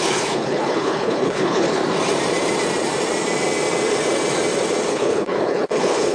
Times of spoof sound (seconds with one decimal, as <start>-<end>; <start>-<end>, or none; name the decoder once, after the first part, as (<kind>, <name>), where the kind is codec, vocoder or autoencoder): 0.0-1.8 (codec, HILCodec); 4.9-6.1